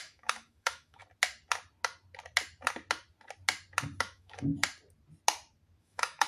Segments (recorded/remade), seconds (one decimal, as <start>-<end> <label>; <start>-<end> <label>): 0.0-1.0 remade; 1.0-4.0 recorded; 4.0-4.5 remade; 4.5-5.8 recorded; 5.8-6.3 remade